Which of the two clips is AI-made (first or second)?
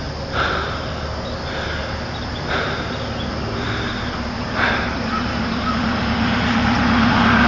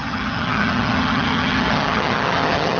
second